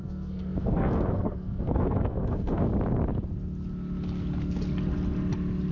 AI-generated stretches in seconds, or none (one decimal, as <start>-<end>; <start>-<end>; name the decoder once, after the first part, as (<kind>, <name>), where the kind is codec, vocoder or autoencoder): 0.0-2.7 (codec, SNAC)